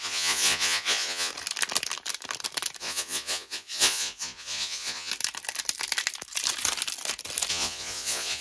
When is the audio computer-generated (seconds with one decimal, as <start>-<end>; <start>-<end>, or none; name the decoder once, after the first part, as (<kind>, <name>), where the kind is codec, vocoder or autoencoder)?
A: 0.0-1.3 (vocoder, Vocos); 2.8-5.1; 7.5-8.4